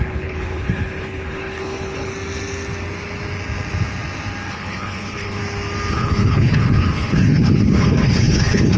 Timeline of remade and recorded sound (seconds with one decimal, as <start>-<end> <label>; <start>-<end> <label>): 0.0-2.1 remade; 2.1-4.5 recorded; 4.5-5.4 remade; 5.4-5.9 recorded; 5.9-8.8 remade